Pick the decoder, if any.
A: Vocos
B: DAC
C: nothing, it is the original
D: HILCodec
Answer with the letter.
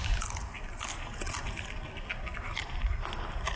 C